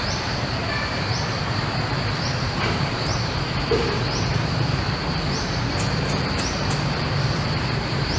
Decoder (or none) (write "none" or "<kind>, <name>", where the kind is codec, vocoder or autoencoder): vocoder, BigVGAN v2